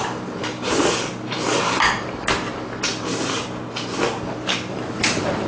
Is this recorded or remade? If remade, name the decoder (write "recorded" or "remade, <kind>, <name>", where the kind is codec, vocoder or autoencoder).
remade, vocoder, BigVGAN v2